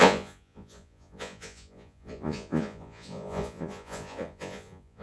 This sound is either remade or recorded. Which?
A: remade